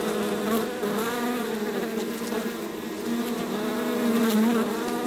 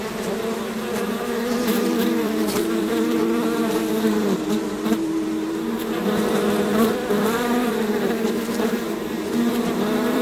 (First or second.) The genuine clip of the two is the first